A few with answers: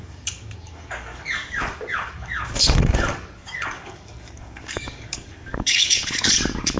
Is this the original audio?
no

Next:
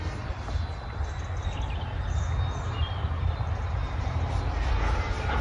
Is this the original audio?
yes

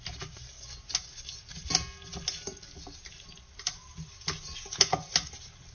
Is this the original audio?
yes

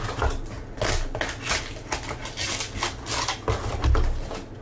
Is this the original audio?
yes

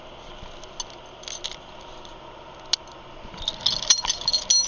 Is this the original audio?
yes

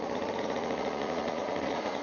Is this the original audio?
no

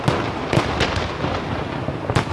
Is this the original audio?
yes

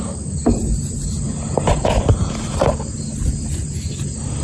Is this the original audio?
yes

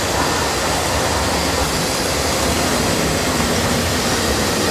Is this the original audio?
yes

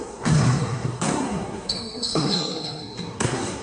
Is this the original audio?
no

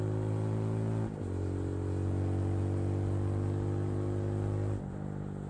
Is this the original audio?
yes